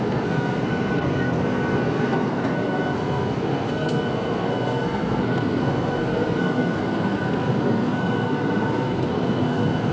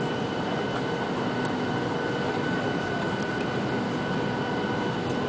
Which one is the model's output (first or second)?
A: first